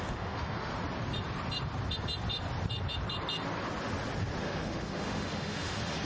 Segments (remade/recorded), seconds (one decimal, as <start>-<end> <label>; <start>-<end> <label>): 0.0-0.7 remade; 0.7-4.4 recorded; 4.4-6.1 remade